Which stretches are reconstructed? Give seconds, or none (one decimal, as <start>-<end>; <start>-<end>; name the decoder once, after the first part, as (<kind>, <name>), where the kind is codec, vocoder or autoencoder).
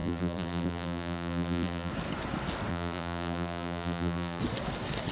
0.0-1.9 (vocoder, BigVGAN v2); 2.7-4.4